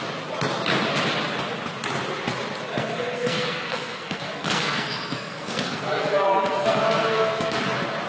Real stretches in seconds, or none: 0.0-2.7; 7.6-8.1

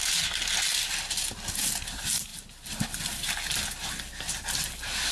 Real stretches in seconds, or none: 0.0-5.1

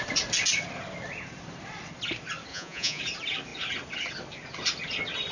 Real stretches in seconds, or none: 0.0-2.5; 3.0-5.3